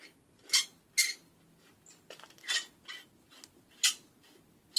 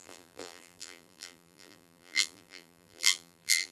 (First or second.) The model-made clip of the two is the second